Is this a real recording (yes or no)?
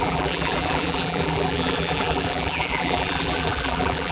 no